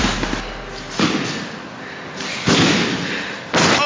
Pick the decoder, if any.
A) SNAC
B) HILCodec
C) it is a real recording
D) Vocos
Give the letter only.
C